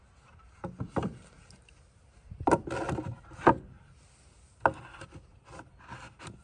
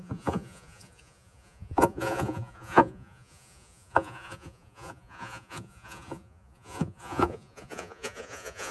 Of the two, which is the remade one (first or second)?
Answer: second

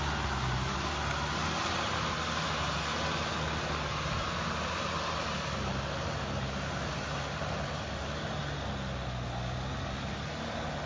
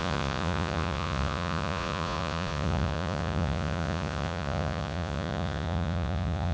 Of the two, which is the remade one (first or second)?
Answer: second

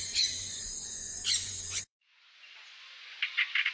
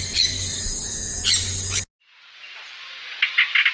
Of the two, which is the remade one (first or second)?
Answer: first